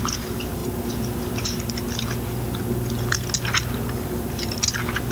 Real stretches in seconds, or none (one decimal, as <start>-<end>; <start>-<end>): 0.0-5.1